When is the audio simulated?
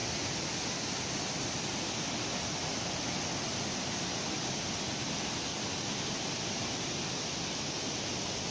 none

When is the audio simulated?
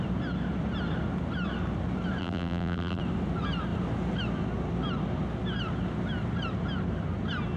2.2-3.0 (vocoder, BigVGAN v2)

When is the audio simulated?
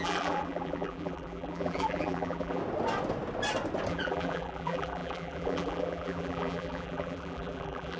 0.0-2.6 (vocoder, BigVGAN v2); 3.9-8.0